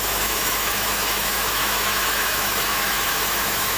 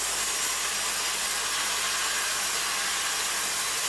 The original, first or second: second